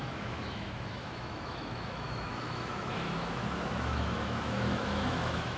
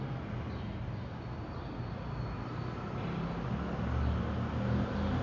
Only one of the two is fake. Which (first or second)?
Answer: first